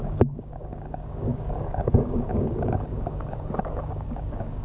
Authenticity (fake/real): fake